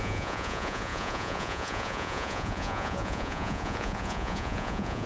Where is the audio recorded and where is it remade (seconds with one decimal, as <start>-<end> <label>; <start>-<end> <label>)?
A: 0.0-5.1 remade